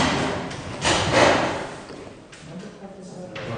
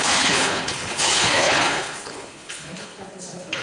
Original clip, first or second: first